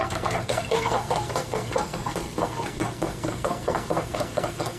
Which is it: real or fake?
fake